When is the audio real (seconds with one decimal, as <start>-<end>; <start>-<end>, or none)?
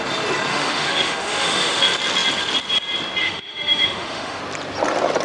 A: 0.0-0.5; 1.8-3.2; 4.4-5.2